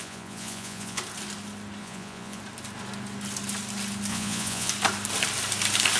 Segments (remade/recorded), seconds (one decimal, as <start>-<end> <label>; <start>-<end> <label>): 0.0-1.0 remade; 1.0-1.8 recorded; 1.8-2.4 remade; 2.4-4.1 recorded; 4.1-4.7 remade; 4.7-6.0 recorded